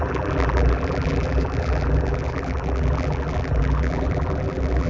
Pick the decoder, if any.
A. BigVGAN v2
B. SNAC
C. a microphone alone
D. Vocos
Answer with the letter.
A